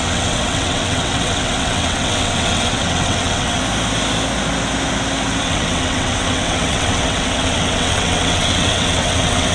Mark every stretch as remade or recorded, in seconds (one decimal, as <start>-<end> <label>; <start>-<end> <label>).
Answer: 0.0-3.6 remade; 3.6-5.4 recorded; 5.4-9.5 remade